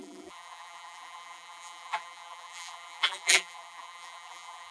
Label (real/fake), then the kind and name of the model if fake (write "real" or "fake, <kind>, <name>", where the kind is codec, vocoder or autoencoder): fake, vocoder, BigVGAN v2